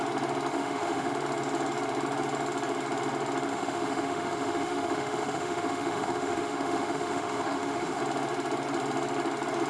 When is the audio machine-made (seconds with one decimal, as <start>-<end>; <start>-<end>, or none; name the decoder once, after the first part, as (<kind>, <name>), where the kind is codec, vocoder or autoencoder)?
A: 0.5-1.1 (autoencoder, DAC-VAE); 3.5-8.0